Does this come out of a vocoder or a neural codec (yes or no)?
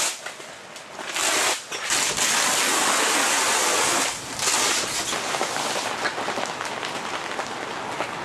no